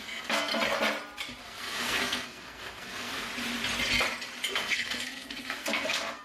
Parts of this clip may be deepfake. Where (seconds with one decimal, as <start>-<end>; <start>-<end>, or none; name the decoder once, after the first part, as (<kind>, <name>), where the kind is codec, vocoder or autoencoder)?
0.0-0.5 (codec, SNAC); 1.4-3.3; 4.5-6.2